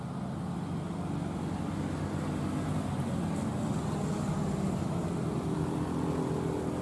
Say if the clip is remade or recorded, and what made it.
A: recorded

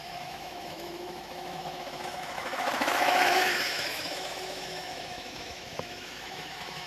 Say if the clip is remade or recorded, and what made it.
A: remade, autoencoder, DAC-VAE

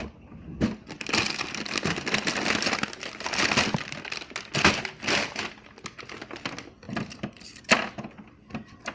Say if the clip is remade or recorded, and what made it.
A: recorded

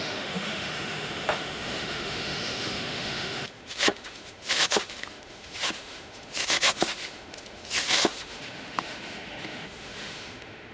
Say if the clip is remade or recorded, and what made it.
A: remade, autoencoder, DAC-VAE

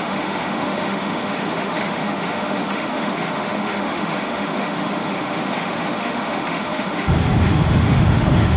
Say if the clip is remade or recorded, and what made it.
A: remade, autoencoder, DAC-VAE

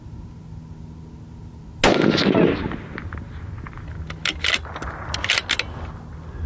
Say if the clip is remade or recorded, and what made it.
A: recorded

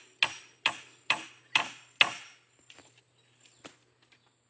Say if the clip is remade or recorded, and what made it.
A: recorded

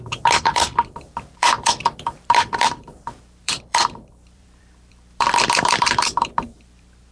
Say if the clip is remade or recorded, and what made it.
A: remade, vocoder, BigVGAN v2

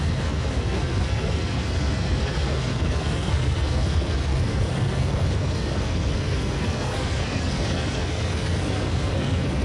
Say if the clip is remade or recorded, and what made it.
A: remade, codec, SNAC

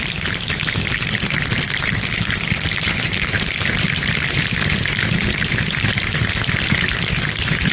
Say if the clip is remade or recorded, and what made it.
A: recorded